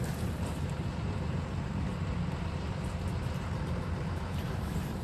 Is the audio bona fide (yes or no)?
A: no